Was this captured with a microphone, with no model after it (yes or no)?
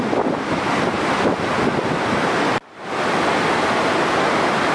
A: yes